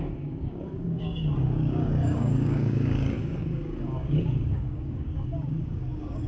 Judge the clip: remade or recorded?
remade